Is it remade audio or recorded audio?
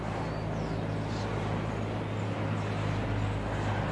recorded